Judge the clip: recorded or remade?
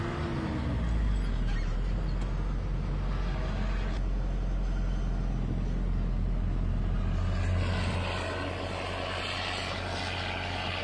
recorded